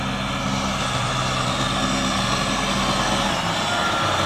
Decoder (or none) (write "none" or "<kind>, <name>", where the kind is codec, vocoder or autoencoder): none